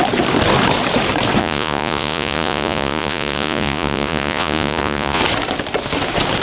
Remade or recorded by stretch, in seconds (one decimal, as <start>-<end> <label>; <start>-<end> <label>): 0.0-1.4 recorded; 1.4-5.2 remade; 5.2-6.4 recorded